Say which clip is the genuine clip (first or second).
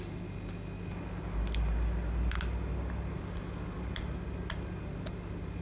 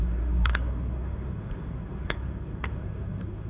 first